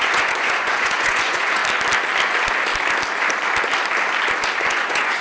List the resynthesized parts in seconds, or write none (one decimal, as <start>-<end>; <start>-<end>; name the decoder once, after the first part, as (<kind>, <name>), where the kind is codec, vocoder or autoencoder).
0.0-1.6 (vocoder, Vocos); 4.7-5.2